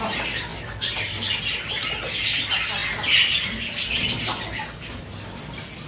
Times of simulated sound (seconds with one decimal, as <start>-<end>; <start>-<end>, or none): none